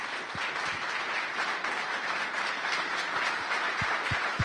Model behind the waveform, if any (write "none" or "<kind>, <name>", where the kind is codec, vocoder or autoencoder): vocoder, BigVGAN v2